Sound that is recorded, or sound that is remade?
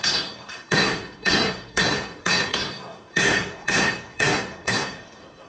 remade